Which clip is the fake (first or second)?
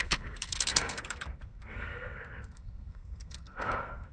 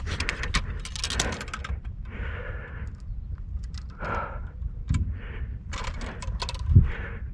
first